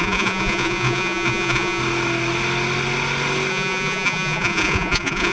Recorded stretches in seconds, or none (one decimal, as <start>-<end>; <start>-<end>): 1.8-3.5